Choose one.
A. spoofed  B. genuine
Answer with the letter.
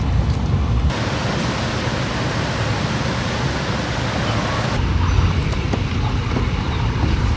B